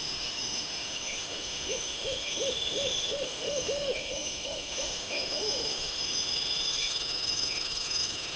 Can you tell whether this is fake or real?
fake